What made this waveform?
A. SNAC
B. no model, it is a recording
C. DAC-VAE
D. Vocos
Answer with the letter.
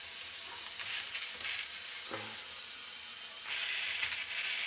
B